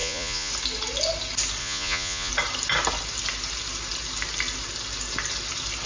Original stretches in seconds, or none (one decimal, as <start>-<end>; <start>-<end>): 0.5-1.6; 2.3-5.9